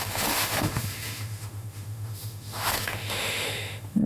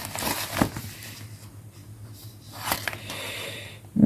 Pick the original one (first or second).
second